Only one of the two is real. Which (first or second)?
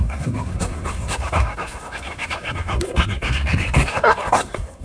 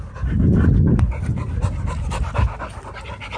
second